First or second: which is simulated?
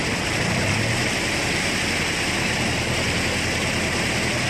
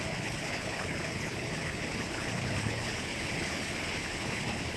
second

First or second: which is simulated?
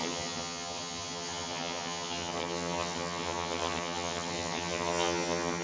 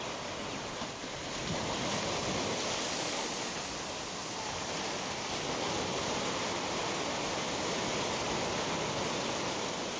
first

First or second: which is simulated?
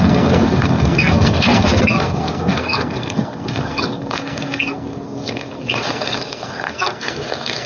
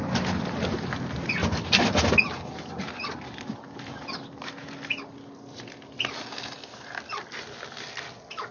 first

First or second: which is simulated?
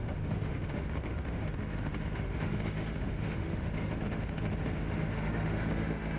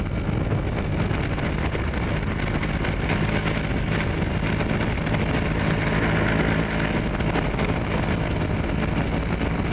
first